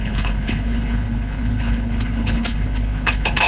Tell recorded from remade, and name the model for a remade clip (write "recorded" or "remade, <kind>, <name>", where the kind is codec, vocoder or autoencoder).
remade, codec, HILCodec